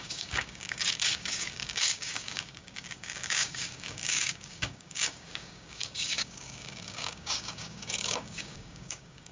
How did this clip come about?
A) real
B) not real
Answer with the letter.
B